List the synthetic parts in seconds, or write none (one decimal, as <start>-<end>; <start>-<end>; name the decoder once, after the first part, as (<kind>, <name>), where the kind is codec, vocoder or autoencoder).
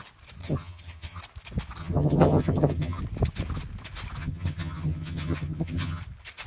0.4-1.2 (vocoder, HiFi-GAN); 1.8-3.0; 4.2-6.0